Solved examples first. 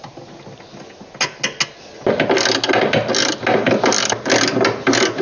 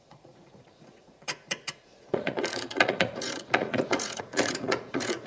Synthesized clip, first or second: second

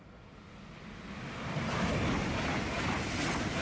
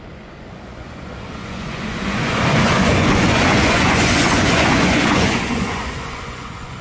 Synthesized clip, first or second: second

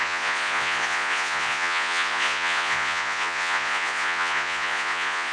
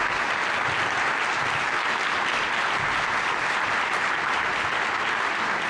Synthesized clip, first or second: first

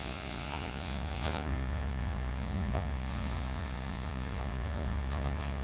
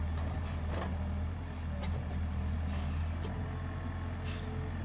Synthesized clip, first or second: first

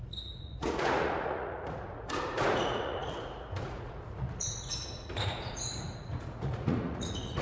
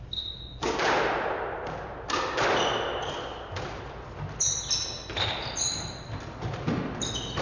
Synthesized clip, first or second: first